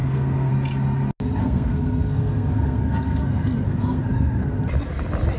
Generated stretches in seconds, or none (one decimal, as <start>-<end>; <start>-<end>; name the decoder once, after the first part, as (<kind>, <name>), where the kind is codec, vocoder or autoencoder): 0.0-0.5 (codec, SNAC); 1.4-4.6